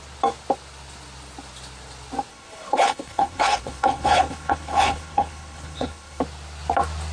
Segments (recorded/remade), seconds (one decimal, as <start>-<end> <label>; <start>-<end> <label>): 0.0-2.3 recorded; 2.3-6.2 remade; 6.2-7.1 recorded

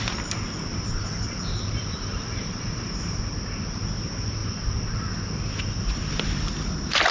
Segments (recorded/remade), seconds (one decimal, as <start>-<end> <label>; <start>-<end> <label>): 0.0-0.7 recorded; 0.7-3.2 remade; 3.2-4.4 recorded; 4.4-5.1 remade; 5.1-7.1 recorded